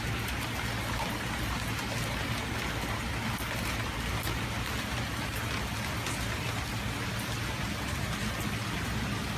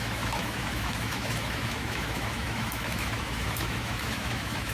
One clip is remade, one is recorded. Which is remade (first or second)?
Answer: second